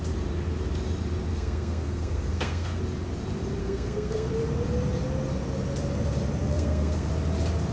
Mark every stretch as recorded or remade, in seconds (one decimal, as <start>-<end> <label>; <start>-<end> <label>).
0.0-1.3 recorded; 1.3-2.8 remade; 2.8-3.6 recorded; 3.6-4.3 remade; 4.3-6.4 recorded; 6.4-7.1 remade; 7.1-7.7 recorded